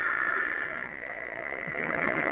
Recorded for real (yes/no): no